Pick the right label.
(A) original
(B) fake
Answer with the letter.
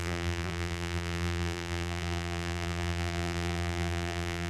B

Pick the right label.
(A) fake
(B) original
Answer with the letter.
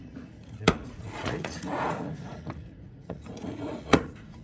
A